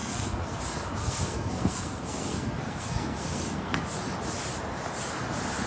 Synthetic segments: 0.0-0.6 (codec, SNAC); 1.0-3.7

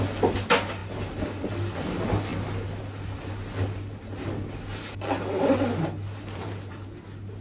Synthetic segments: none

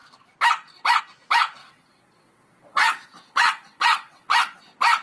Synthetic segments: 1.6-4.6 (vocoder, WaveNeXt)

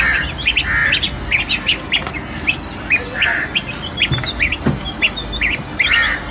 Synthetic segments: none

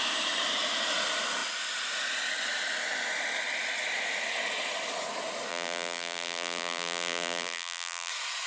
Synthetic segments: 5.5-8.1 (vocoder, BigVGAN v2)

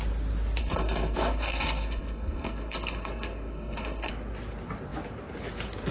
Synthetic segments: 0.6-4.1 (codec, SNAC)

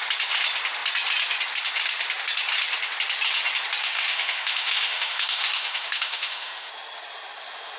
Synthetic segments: 3.8-6.7 (autoencoder, DAC-VAE)

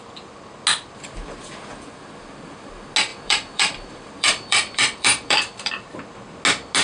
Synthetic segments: 3.1-5.7 (vocoder, BigVGAN v2)